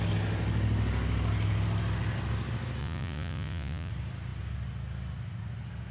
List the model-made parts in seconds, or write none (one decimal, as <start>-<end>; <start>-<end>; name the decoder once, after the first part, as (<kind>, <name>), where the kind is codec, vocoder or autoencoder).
2.8-3.9 (vocoder, Vocos)